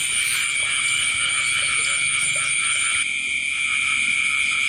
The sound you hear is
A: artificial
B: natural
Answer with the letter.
B